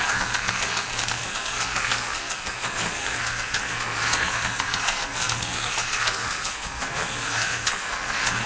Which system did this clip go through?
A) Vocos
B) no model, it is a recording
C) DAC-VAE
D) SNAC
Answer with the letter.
D